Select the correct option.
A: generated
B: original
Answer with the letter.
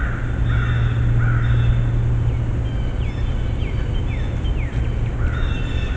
B